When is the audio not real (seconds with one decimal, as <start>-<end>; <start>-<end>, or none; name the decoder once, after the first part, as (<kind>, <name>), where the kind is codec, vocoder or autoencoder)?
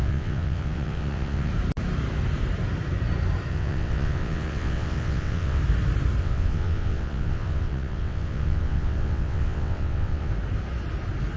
0.0-1.5 (vocoder, WaveNeXt); 3.5-5.6; 6.2-10.3